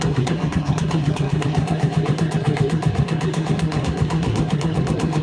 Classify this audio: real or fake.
fake